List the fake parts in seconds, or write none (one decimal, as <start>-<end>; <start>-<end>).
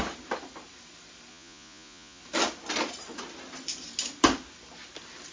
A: 1.3-2.2